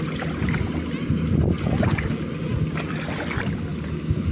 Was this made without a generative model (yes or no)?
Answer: yes